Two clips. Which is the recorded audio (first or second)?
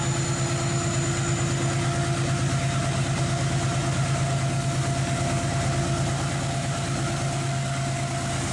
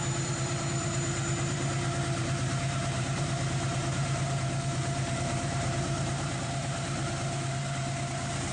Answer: first